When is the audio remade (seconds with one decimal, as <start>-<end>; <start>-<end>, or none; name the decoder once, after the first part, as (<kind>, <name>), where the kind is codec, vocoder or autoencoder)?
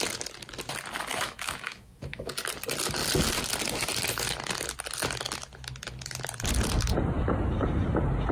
1.1-2.3 (autoencoder, DAC-VAE)